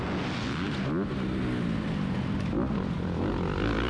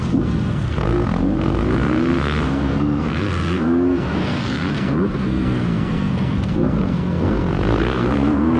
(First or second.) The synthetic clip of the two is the second